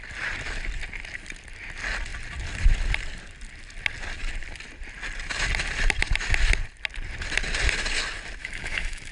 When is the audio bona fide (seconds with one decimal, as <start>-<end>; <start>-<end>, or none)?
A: 0.0-8.4